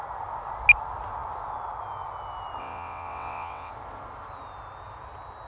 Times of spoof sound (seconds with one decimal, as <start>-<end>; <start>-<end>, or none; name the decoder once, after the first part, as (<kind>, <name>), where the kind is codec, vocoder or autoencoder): 2.6-3.7 (vocoder, WaveNeXt)